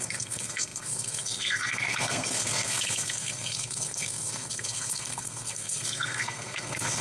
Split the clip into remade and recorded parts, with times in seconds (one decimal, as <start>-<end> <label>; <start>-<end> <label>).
0.0-7.0 remade